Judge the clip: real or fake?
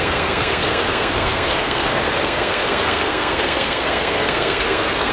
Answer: fake